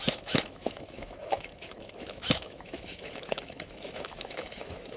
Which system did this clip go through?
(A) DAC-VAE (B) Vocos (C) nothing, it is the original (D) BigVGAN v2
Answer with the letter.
A